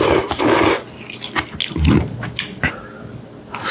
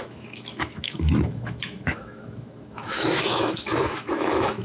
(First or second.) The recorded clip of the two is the first